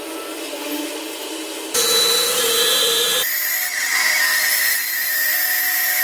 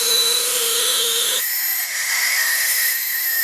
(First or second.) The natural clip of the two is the first